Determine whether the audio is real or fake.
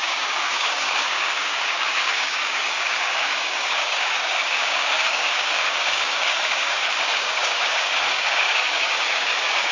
fake